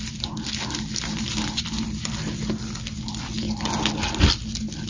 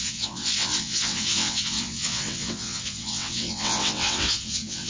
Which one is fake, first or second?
second